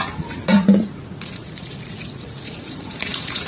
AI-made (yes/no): yes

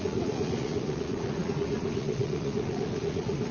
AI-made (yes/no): yes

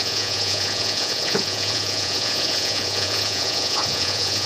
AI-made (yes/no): yes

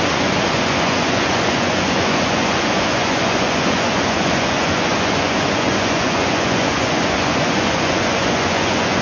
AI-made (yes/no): yes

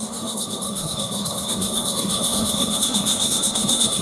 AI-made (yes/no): yes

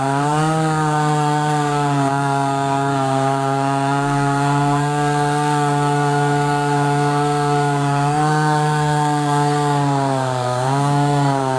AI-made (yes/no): yes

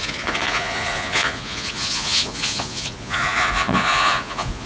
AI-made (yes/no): yes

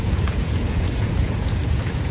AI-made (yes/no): yes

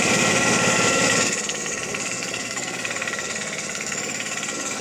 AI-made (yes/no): yes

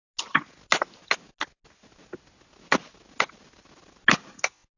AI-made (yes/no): no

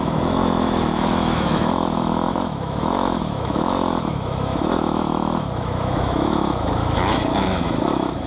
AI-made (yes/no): yes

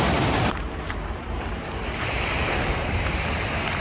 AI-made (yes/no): yes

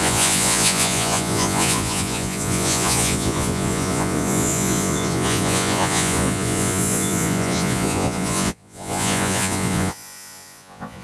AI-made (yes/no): yes